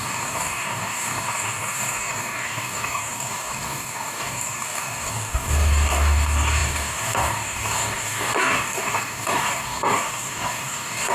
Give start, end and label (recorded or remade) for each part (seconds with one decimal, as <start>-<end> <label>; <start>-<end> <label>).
0.0-11.1 remade